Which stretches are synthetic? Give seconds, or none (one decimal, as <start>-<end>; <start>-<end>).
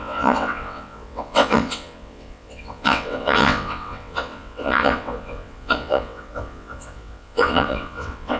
0.0-8.4